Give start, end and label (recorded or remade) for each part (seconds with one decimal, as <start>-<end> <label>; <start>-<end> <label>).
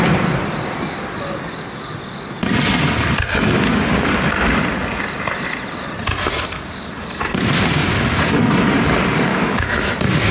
0.0-9.3 recorded; 9.3-9.9 remade; 9.9-10.3 recorded